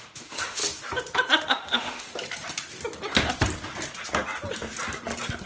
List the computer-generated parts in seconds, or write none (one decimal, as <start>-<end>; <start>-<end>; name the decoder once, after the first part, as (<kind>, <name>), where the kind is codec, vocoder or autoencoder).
0.0-0.6 (autoencoder, DAC-VAE); 1.5-2.1